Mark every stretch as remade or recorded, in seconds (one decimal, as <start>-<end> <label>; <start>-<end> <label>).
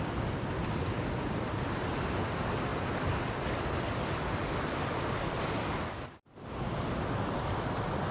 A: 0.0-8.1 recorded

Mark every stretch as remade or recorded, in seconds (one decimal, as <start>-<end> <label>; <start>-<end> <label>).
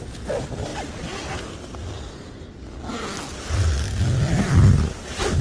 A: 0.0-5.4 recorded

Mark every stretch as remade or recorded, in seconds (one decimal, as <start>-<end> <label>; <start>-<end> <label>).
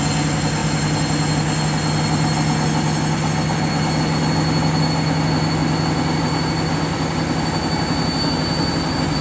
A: 0.0-0.6 remade; 0.6-4.8 recorded; 4.8-9.2 remade